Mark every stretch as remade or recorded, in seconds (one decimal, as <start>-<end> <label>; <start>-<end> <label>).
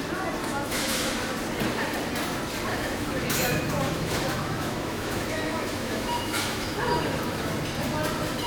0.0-0.4 recorded; 0.4-1.1 remade; 1.1-2.7 recorded; 2.7-7.5 remade; 7.5-8.5 recorded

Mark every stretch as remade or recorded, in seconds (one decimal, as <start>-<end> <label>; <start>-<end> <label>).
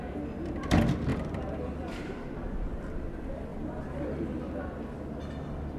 0.0-5.8 recorded